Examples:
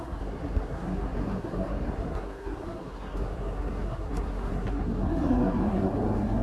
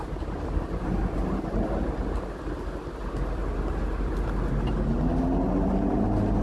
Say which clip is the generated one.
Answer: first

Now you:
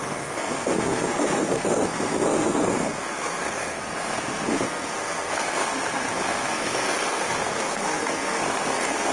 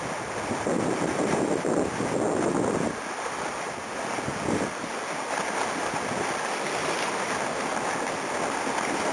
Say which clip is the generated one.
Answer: first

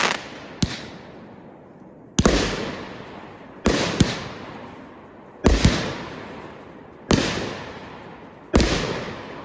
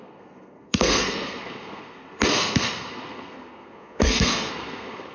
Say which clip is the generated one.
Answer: second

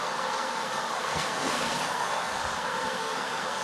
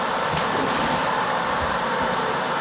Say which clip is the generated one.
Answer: first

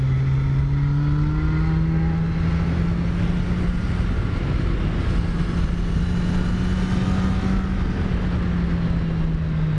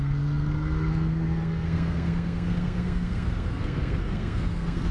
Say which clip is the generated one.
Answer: second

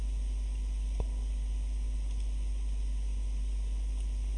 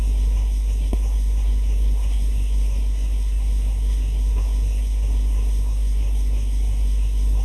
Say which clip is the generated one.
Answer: second